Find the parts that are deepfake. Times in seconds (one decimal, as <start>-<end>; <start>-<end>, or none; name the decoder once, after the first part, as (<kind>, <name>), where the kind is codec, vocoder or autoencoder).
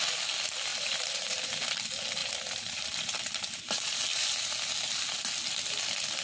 0.7-1.8 (vocoder, BigVGAN v2); 2.2-3.4